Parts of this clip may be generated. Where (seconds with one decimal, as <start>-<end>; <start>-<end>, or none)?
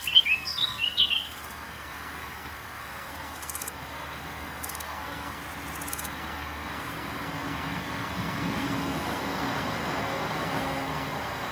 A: 0.0-5.4; 5.9-11.5